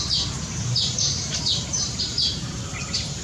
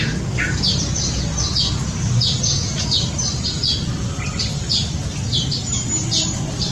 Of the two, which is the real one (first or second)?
second